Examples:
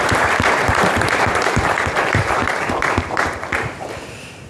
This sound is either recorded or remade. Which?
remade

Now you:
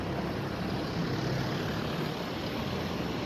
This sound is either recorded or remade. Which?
recorded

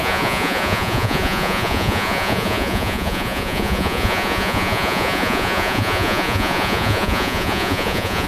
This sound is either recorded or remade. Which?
remade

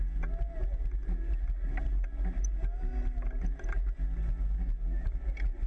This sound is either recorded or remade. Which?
recorded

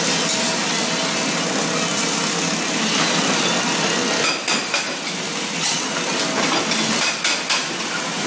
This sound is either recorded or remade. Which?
recorded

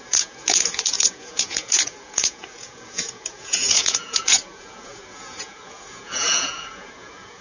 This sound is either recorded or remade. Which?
remade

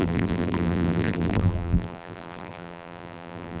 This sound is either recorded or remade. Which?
remade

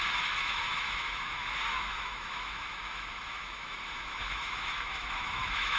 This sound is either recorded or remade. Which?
remade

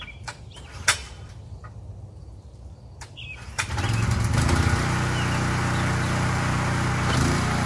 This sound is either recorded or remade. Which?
recorded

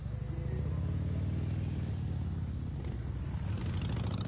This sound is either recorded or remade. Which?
recorded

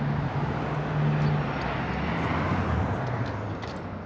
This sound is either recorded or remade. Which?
recorded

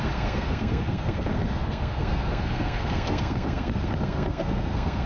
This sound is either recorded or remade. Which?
remade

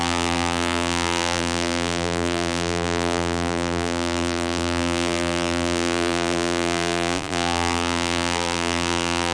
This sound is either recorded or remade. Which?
remade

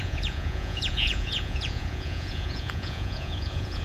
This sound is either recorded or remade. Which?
remade